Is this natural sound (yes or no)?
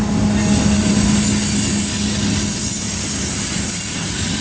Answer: yes